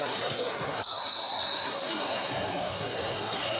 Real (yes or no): no